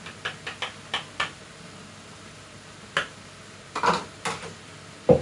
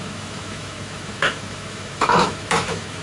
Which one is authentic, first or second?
first